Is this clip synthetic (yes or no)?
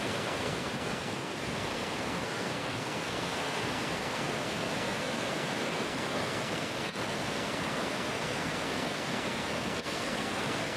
yes